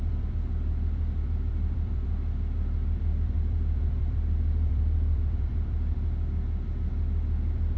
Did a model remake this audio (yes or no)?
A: yes